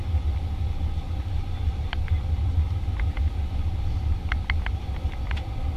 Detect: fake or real real